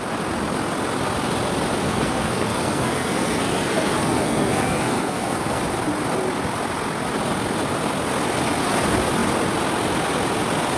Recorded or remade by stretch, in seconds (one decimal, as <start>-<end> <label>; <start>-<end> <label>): 0.0-1.8 recorded; 1.8-5.6 remade; 5.6-10.8 recorded